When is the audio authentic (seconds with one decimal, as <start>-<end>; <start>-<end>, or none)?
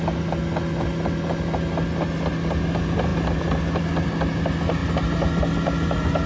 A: 0.0-6.3